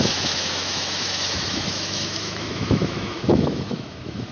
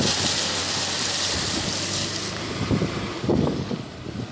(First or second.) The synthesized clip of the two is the first